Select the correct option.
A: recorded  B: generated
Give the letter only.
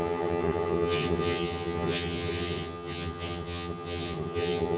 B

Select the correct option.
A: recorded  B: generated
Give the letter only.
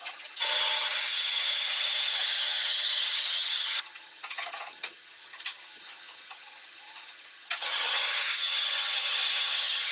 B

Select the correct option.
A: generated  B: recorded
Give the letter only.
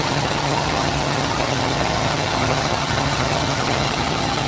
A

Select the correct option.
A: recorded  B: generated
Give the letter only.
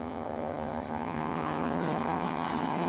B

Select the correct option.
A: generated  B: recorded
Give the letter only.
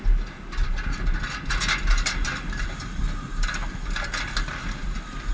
B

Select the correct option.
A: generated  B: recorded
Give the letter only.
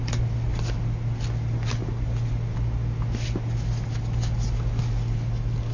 B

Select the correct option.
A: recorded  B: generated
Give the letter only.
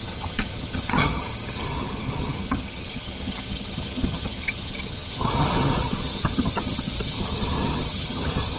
B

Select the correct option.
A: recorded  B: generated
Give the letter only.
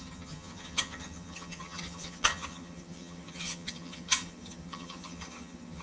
B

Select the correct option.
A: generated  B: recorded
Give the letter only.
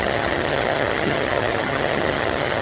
A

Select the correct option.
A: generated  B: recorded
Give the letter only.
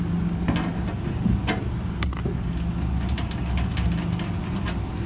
B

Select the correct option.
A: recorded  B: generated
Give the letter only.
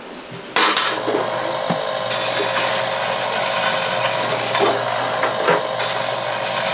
A